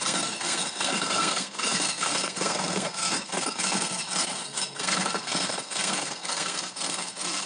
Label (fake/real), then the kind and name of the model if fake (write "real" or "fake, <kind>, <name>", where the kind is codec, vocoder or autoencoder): fake, codec, SNAC